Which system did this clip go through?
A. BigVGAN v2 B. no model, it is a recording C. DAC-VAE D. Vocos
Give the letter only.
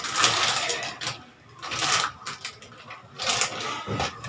B